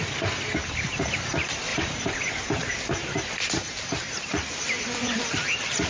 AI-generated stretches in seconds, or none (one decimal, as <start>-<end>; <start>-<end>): none